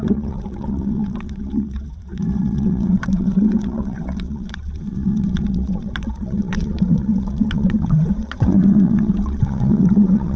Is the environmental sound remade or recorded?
remade